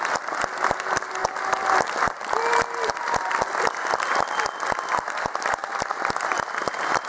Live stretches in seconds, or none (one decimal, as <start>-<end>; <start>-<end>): 0.0-7.1